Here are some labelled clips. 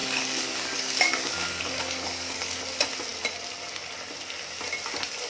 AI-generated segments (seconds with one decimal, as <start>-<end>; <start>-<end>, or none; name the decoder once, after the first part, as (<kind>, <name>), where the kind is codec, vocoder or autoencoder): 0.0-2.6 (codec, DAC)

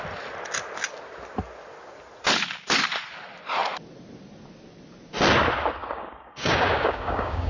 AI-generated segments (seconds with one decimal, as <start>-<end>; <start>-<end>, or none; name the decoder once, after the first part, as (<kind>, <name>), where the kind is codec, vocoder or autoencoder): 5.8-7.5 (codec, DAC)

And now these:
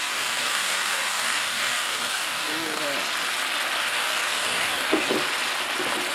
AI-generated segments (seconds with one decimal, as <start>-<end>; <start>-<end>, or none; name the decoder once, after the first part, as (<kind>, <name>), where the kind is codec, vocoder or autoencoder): 0.0-2.8 (codec, DAC); 3.8-5.1